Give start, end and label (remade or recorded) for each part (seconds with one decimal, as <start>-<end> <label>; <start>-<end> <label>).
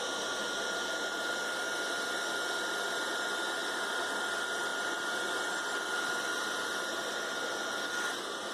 0.0-3.6 recorded; 3.6-4.2 remade; 4.2-8.5 recorded